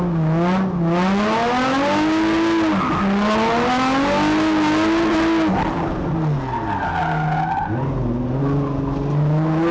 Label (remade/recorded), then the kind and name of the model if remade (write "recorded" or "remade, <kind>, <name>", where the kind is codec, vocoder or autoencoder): recorded